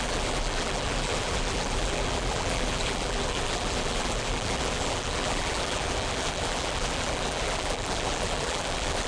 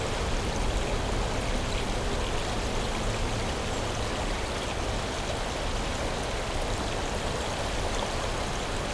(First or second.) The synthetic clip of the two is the first